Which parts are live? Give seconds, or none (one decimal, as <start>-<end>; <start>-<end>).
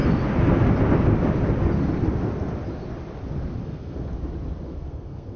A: 0.0-3.6; 4.1-4.7